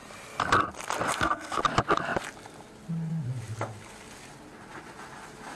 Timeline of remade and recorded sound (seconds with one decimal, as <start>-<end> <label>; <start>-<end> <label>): 0.0-1.1 recorded; 1.1-1.6 remade; 1.6-5.6 recorded